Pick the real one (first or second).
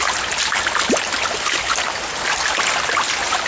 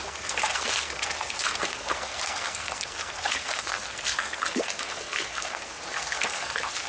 first